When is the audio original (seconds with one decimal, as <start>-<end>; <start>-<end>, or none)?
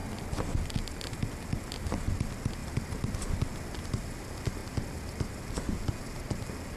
0.0-2.6; 3.3-4.6; 5.6-6.8